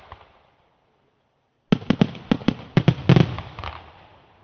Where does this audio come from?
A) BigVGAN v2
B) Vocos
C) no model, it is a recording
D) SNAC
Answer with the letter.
C